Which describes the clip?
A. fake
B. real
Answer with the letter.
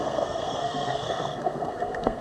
A